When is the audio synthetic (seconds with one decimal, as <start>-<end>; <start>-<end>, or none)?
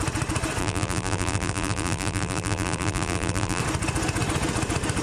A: 0.6-3.6